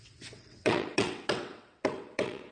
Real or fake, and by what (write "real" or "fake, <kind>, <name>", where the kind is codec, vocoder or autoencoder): fake, vocoder, WaveNeXt